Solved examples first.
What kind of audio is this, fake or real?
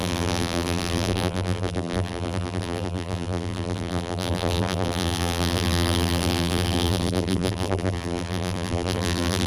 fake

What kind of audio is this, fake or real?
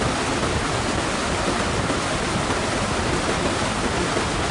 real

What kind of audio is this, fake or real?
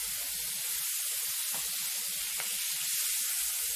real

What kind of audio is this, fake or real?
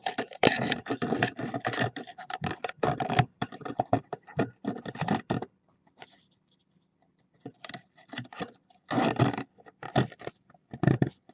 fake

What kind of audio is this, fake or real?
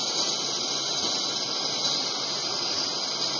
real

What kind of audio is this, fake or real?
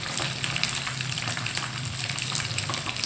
fake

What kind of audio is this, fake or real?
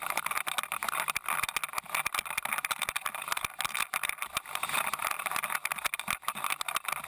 real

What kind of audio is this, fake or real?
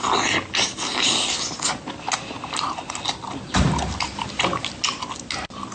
real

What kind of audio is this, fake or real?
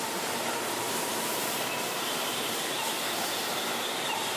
fake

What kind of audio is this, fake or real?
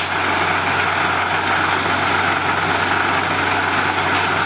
real